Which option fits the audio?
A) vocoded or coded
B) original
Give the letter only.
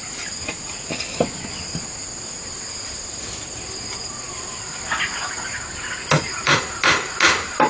B